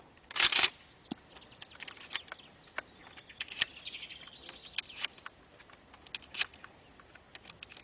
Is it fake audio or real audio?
real